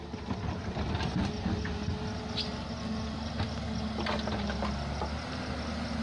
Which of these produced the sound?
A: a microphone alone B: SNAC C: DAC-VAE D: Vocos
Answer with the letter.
A